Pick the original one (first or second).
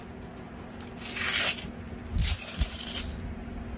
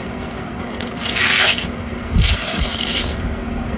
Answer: first